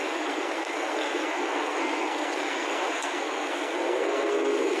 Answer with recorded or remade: remade